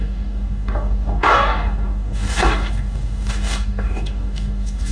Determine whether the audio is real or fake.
fake